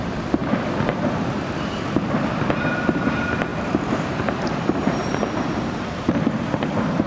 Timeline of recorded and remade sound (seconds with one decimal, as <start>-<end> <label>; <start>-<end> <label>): 0.0-0.4 remade; 0.4-3.1 recorded; 3.1-7.1 remade